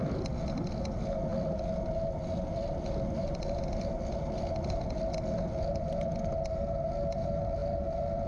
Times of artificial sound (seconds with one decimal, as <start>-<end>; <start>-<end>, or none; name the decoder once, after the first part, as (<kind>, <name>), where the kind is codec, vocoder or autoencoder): none